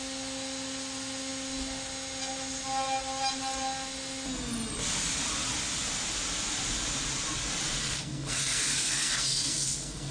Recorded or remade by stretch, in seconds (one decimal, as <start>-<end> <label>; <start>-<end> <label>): 0.0-7.8 recorded; 7.8-10.1 remade